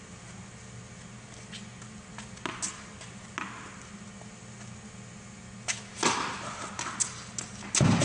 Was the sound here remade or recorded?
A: recorded